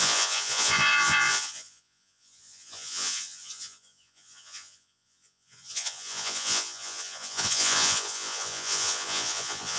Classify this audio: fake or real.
fake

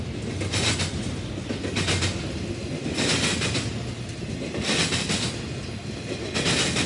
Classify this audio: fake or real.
real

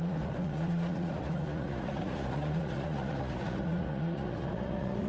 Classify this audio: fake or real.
fake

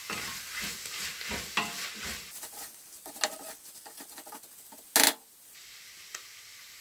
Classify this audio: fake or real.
real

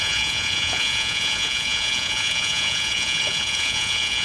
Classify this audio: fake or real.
fake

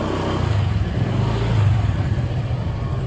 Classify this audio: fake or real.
real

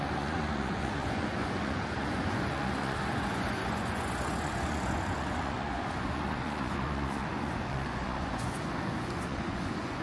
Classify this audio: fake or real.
fake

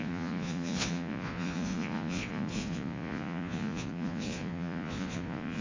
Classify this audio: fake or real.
fake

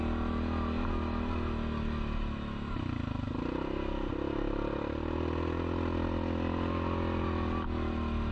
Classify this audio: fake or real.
real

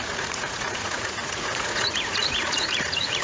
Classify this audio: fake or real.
fake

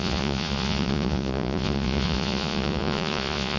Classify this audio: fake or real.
fake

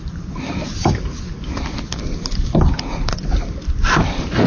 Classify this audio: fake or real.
real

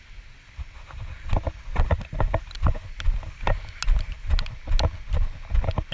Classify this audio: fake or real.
real